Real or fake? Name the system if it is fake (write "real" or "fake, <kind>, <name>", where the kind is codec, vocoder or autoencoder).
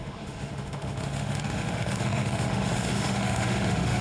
fake, autoencoder, DAC-VAE